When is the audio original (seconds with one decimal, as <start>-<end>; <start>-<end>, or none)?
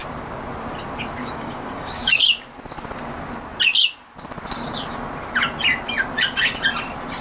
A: 0.0-1.2; 2.2-7.2